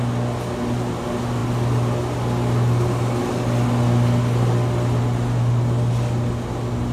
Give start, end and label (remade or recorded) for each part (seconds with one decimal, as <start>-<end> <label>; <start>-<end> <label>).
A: 0.0-6.9 recorded